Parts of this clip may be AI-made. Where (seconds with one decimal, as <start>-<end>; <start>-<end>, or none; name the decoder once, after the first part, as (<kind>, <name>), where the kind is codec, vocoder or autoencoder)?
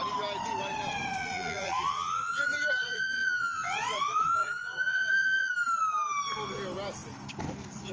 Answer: 1.2-2.4 (vocoder, Vocos); 2.8-5.5